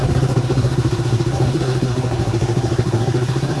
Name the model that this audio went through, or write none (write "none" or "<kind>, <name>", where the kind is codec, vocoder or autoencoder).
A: codec, SNAC